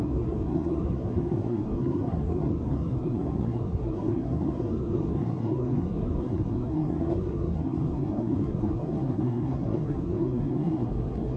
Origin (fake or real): fake